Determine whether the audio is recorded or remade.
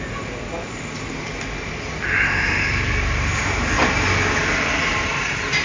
recorded